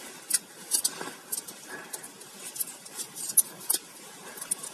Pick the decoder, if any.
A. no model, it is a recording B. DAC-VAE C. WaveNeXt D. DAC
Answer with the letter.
A